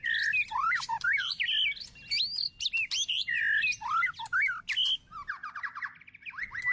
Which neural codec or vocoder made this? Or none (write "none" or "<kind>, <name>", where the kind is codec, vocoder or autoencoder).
none